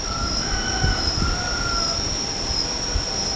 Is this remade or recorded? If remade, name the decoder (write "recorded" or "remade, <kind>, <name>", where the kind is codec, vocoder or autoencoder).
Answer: recorded